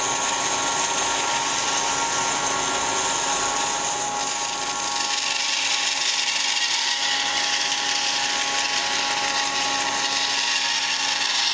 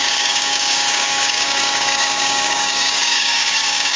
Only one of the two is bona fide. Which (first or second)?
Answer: first